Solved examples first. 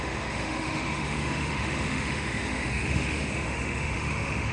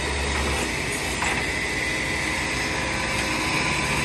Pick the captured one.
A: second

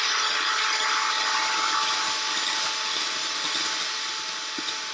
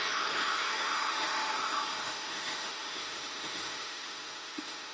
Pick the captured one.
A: first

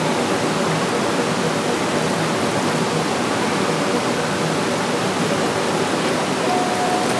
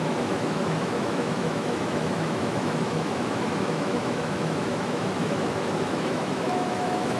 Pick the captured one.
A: first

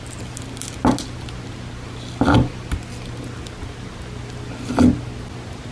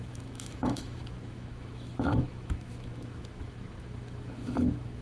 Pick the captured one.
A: first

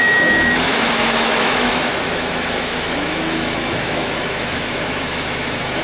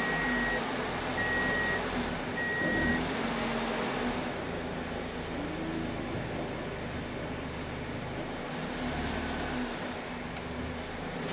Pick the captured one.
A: second